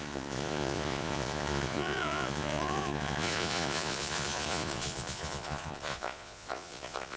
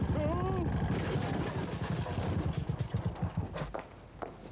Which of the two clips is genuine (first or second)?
second